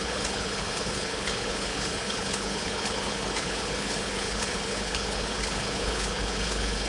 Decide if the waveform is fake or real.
fake